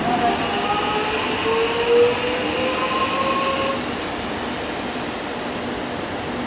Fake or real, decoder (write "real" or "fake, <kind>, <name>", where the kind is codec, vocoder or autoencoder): real